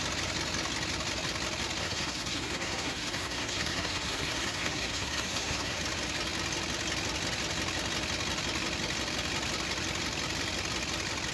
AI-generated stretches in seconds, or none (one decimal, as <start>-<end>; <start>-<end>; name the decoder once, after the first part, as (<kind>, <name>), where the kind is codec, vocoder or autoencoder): 1.8-5.8 (codec, SNAC)